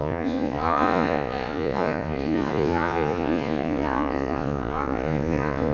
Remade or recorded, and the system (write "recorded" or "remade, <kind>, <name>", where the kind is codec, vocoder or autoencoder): remade, vocoder, Vocos